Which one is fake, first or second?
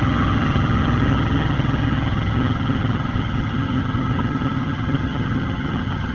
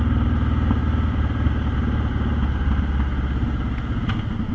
first